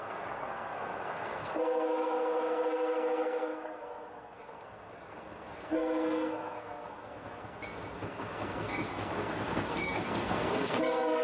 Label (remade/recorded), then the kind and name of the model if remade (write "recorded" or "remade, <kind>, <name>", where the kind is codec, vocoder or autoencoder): remade, codec, SNAC